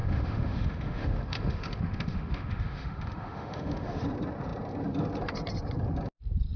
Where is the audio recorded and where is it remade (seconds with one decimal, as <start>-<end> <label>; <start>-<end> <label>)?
0.0-4.0 remade; 4.0-6.6 recorded